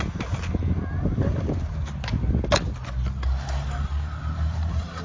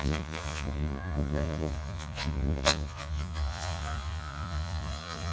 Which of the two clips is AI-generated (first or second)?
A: second